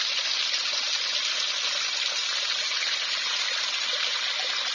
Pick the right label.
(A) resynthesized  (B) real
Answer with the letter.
B